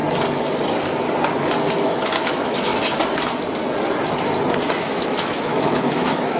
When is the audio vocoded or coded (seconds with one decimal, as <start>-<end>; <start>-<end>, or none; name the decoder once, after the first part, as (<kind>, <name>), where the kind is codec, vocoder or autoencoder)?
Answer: 1.8-2.7 (autoencoder, DAC-VAE); 4.8-6.4